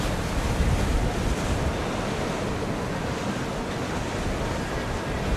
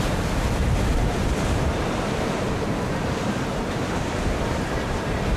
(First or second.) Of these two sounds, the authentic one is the first